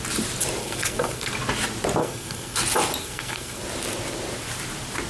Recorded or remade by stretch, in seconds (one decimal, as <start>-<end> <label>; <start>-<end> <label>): 0.0-0.6 recorded; 0.6-1.3 remade; 1.3-2.0 recorded; 2.0-2.6 remade; 2.6-3.0 recorded; 3.0-3.6 remade; 3.6-5.1 recorded